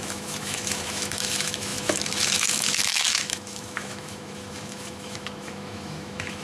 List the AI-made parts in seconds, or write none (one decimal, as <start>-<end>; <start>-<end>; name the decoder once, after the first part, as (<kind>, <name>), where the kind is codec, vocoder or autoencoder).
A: 0.0-6.4 (autoencoder, DAC-VAE)